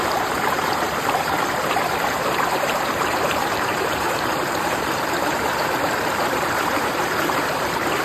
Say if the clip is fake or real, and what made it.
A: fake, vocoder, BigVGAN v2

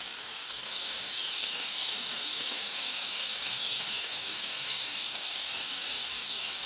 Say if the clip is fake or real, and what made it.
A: fake, codec, DAC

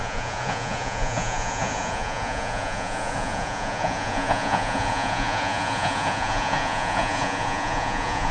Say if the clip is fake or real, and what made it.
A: fake, vocoder, Vocos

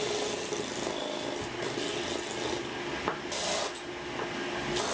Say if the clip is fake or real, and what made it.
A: real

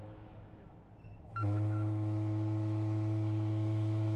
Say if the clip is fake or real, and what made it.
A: fake, autoencoder, DAC-VAE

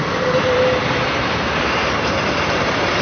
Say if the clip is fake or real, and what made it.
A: fake, vocoder, BigVGAN v2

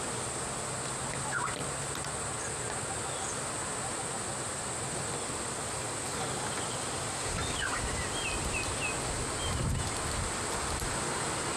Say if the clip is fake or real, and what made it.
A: real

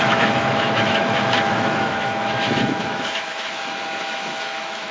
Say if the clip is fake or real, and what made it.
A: fake, autoencoder, DAC-VAE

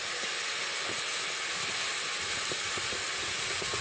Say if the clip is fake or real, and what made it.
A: real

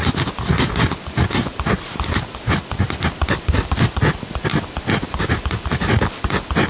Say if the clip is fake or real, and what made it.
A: real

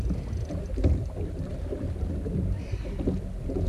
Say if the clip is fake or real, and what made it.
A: real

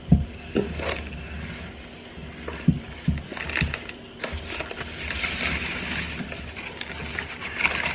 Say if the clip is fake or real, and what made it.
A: real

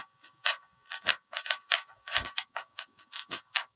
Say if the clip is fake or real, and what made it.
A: fake, codec, DAC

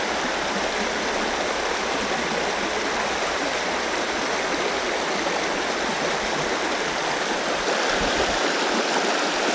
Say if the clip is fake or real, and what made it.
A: real